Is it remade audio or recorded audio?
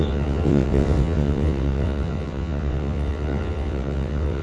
remade